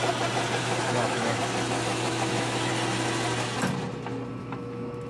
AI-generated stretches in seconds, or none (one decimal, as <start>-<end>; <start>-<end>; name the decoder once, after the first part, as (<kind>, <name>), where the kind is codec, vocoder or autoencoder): 0.6-1.4 (autoencoder, DAC-VAE); 1.9-2.7; 4.4-5.1

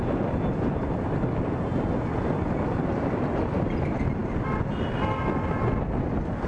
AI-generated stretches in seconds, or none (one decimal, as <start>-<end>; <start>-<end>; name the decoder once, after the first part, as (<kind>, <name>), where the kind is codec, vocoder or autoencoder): none

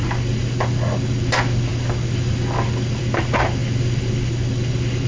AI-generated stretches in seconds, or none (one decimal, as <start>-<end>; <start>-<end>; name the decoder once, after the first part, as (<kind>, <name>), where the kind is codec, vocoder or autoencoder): none

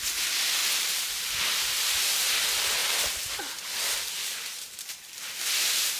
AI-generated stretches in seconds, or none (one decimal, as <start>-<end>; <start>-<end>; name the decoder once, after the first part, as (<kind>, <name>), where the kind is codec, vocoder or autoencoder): 0.6-1.4 (vocoder, BigVGAN v2); 2.8-5.1